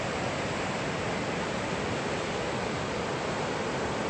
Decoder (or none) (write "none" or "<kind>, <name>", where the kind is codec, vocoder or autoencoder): none